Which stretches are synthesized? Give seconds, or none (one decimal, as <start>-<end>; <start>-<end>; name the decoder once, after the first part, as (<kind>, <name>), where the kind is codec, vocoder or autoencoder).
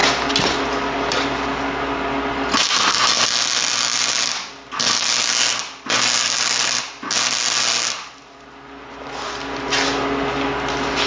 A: none